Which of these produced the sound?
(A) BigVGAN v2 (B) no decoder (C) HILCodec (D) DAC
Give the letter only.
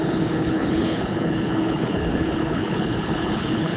C